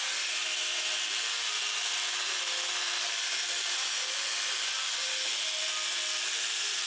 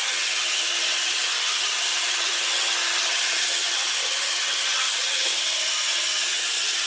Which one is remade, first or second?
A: second